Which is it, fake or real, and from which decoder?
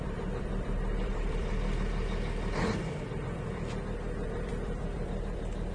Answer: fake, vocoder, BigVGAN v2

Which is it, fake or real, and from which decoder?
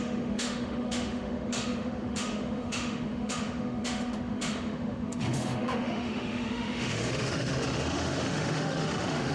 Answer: fake, autoencoder, DAC-VAE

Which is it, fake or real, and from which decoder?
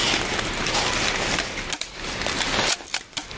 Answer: real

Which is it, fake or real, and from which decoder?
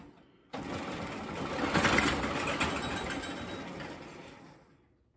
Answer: real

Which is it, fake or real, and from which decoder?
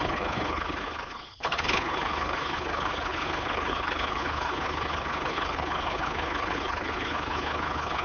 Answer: fake, codec, HILCodec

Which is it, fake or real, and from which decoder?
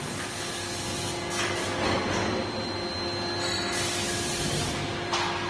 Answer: real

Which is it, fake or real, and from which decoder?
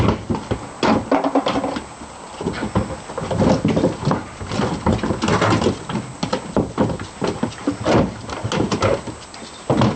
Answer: real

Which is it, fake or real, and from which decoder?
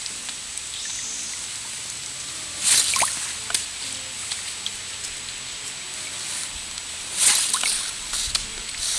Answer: real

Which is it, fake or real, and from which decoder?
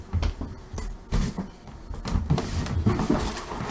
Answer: real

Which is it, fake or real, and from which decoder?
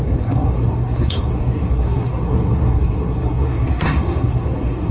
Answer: fake, codec, SNAC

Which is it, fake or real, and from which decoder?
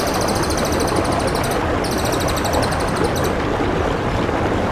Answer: real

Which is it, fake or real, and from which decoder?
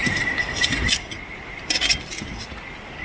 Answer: real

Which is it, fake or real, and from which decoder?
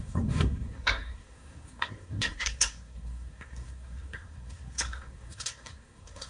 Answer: fake, codec, SNAC